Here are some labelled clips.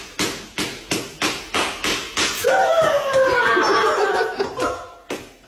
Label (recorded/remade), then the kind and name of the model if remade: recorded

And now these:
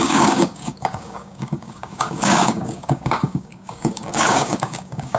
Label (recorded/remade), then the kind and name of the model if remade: remade, codec, DAC